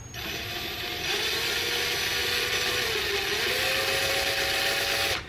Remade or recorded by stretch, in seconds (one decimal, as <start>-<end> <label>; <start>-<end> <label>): 0.0-0.4 recorded; 0.4-1.3 remade; 1.3-5.3 recorded